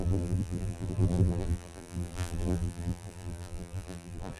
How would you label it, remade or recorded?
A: remade